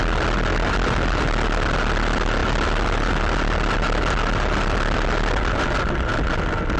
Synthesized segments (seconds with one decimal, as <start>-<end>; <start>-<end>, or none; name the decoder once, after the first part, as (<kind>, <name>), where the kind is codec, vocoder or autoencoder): none